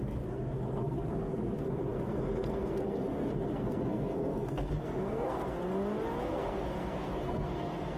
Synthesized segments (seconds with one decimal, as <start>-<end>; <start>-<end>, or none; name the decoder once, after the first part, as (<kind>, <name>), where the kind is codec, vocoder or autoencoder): 0.0-5.6 (codec, SNAC); 6.2-8.0